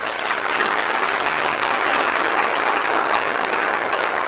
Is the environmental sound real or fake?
fake